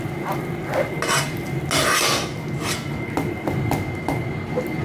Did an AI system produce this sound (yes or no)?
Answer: no